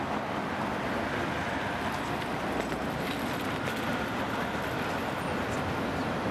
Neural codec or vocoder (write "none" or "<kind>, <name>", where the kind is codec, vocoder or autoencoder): none